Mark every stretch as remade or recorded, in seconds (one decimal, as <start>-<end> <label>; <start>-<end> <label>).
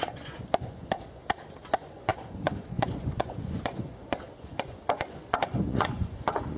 0.0-1.2 remade; 1.2-1.7 recorded; 1.7-6.6 remade